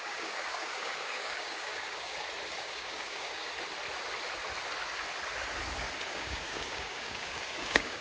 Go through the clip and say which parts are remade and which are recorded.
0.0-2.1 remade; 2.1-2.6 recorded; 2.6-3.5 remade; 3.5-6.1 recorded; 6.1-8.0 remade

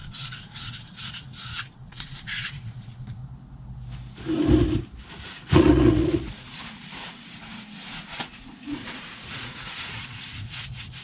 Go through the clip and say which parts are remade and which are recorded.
0.0-3.2 remade; 3.2-5.1 recorded; 5.1-11.0 remade

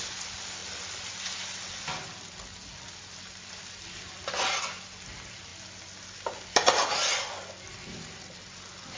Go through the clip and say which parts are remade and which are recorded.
0.0-9.0 recorded